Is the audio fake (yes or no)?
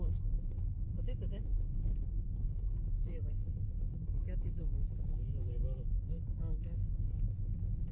yes